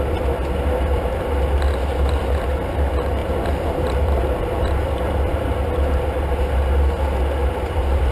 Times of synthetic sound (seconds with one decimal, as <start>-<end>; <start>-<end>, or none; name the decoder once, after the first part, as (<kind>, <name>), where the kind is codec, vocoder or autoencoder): 3.2-6.2 (vocoder, BigVGAN v2); 7.4-8.1